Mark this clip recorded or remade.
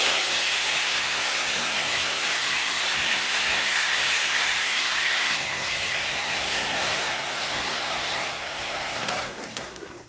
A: remade